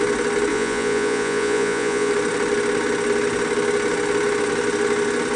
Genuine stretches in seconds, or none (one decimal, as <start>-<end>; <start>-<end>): 0.0-0.5; 2.1-5.4